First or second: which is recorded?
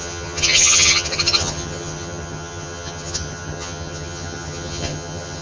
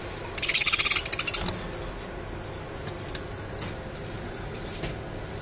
second